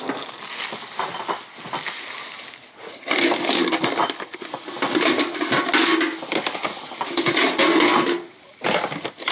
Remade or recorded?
recorded